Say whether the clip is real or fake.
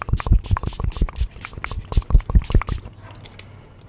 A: real